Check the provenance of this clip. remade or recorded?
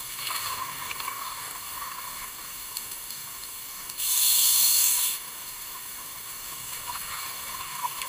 remade